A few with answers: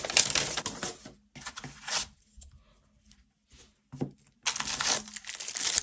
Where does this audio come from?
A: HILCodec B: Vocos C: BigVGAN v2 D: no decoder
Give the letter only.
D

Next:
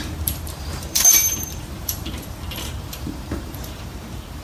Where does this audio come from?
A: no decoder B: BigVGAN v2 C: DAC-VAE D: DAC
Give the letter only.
B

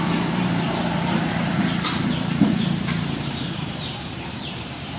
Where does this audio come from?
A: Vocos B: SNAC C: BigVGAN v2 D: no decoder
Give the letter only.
C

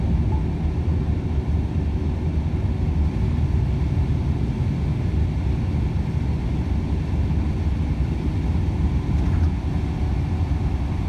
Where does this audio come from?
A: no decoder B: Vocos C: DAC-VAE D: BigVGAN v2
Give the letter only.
A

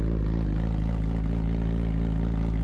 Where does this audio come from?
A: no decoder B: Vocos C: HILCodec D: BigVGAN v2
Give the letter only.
A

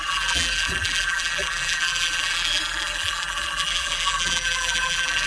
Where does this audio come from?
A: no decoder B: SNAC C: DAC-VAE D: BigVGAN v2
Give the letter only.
D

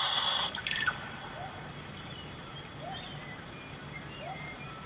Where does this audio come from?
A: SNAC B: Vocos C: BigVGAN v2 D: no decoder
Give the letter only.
C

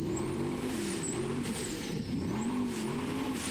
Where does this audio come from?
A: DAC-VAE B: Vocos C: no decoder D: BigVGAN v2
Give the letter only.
D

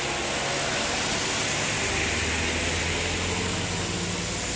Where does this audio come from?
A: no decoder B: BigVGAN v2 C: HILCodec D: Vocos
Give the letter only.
A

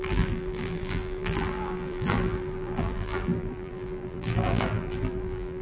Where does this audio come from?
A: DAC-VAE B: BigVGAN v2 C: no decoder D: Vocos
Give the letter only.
B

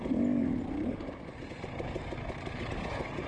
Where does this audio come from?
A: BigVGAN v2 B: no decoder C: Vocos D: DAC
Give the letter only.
B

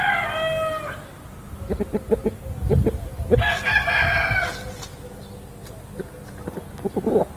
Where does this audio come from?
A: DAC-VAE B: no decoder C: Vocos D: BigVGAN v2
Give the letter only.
B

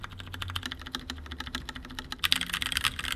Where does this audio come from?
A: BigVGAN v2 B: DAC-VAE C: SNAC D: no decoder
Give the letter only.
D